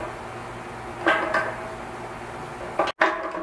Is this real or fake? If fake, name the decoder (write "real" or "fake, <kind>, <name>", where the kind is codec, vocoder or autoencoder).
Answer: real